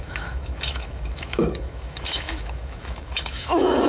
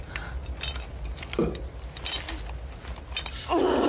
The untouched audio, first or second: second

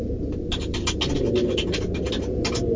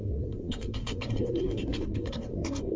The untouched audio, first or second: first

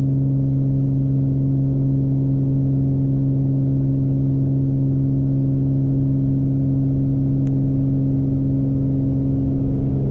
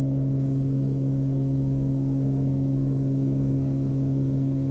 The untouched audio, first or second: first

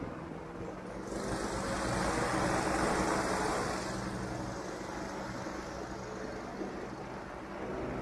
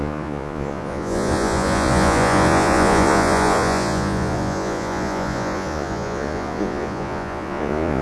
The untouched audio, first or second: first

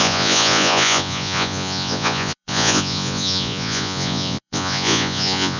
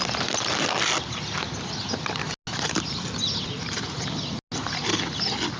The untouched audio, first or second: second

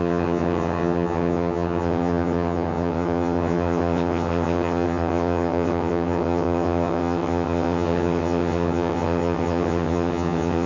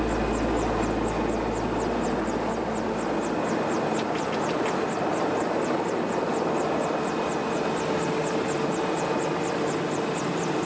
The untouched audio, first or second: second